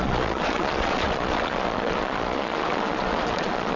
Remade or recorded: remade